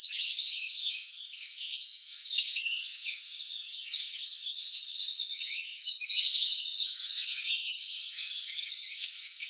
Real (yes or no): no